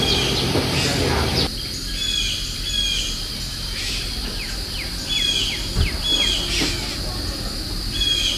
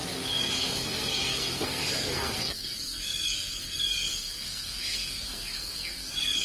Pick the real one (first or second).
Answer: first